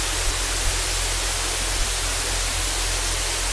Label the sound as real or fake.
real